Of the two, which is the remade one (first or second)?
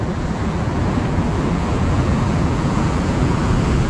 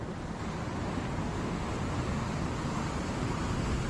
first